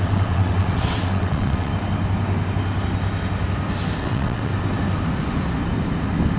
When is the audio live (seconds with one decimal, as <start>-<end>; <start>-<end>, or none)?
1.7-4.0; 4.5-6.4

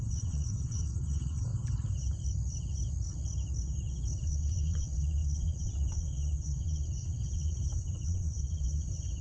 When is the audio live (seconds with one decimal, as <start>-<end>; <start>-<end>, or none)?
1.5-4.2

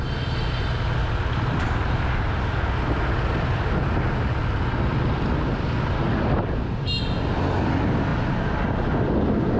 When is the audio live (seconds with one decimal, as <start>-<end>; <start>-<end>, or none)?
0.0-9.6

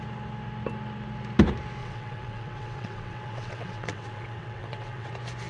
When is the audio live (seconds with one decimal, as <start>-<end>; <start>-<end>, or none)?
0.0-1.8; 5.1-5.5

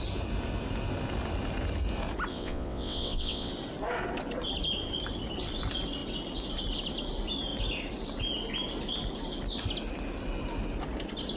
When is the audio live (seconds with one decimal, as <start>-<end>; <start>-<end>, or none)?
0.0-2.3; 3.5-11.4

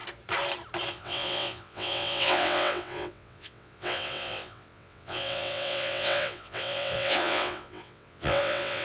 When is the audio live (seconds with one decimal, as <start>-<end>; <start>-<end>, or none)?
0.0-0.9

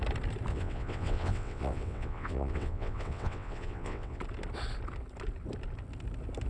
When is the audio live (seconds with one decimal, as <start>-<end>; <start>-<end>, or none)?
0.0-0.5; 4.2-6.5